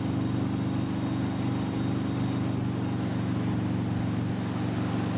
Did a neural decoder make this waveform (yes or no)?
no